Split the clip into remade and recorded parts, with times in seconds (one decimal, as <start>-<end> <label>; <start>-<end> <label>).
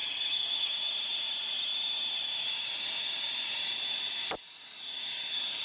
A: 0.0-0.7 remade; 0.7-5.6 recorded